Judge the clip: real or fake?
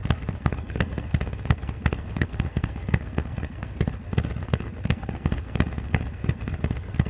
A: fake